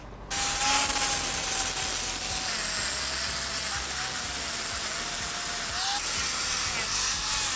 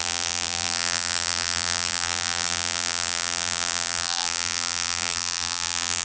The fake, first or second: second